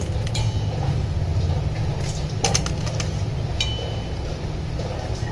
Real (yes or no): yes